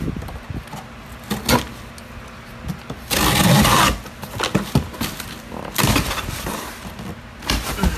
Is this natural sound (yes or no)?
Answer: yes